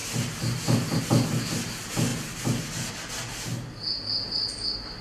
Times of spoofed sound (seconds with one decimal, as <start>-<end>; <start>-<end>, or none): 0.0-1.0